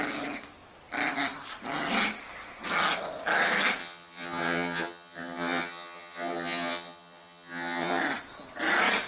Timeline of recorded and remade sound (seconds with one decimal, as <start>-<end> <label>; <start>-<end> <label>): 0.0-3.8 recorded; 3.8-8.0 remade; 8.0-9.1 recorded